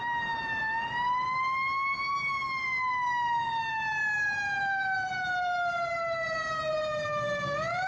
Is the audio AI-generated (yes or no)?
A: no